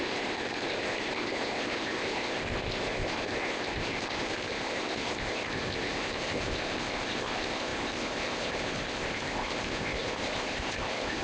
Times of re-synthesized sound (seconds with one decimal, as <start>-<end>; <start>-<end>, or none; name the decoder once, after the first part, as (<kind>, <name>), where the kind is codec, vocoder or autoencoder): 0.0-11.2 (codec, ZipCodec)